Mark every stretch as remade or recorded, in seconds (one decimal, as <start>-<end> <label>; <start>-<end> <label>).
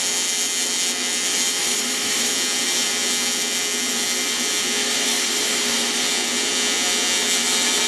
0.0-1.6 recorded; 1.6-2.3 remade; 2.3-4.8 recorded; 4.8-6.0 remade; 6.0-7.9 recorded